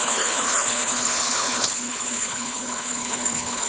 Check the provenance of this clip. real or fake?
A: fake